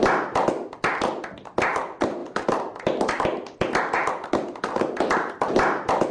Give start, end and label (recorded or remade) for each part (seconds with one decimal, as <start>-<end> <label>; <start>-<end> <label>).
0.0-6.1 recorded